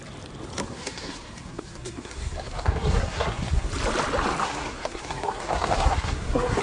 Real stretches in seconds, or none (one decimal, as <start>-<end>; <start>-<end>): 0.0-0.6; 3.7-4.4